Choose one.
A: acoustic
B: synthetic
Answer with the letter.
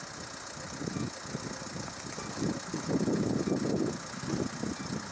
A